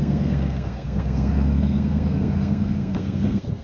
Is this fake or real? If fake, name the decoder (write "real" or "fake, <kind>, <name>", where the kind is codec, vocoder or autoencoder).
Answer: fake, codec, SNAC